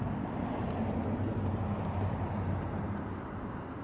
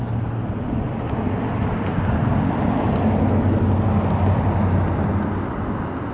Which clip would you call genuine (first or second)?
second